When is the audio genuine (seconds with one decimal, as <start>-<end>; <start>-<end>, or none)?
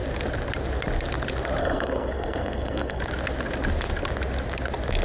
0.0-1.6; 3.0-5.0